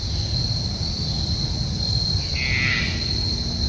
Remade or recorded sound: recorded